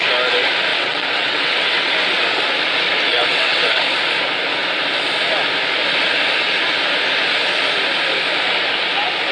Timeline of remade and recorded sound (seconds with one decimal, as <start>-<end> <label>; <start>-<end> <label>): 0.0-0.7 recorded; 0.7-1.9 remade; 1.9-3.1 recorded; 3.1-3.8 remade; 3.8-9.3 recorded